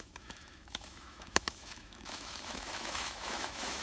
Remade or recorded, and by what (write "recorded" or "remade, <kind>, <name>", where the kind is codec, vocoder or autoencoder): remade, autoencoder, DAC-VAE